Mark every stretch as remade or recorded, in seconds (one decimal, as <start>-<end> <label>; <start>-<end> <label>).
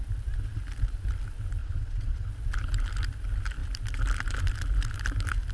0.0-1.6 recorded; 1.6-2.3 remade; 2.3-5.5 recorded